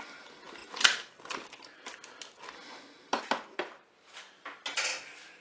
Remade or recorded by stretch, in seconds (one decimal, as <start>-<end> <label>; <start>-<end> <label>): 0.0-5.4 recorded